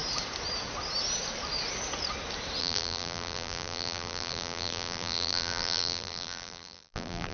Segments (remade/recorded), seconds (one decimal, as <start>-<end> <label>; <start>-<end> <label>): 0.0-2.6 recorded; 2.6-7.3 remade